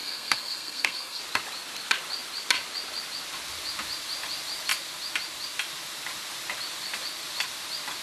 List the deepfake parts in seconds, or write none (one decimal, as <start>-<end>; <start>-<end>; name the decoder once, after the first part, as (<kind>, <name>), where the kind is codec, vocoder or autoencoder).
0.0-1.2 (codec, SNAC)